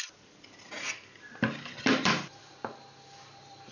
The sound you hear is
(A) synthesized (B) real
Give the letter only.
B